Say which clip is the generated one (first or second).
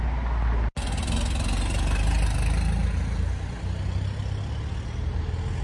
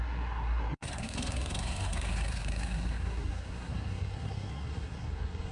second